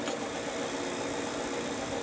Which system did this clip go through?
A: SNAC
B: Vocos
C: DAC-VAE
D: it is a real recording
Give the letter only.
D